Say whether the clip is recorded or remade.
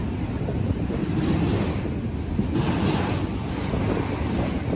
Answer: recorded